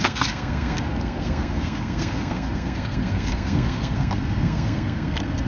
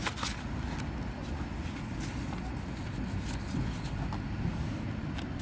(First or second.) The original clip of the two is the second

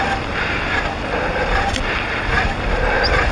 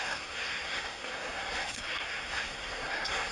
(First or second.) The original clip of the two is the first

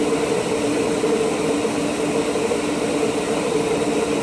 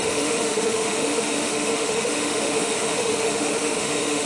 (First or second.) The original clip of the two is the first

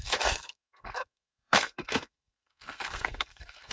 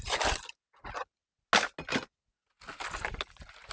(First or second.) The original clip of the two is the second